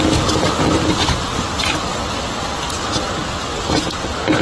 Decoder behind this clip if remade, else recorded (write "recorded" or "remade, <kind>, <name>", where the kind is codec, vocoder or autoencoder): recorded